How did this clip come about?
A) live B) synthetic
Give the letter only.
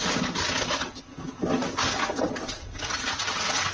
A